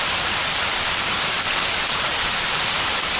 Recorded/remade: remade